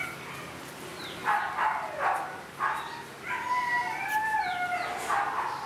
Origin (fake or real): real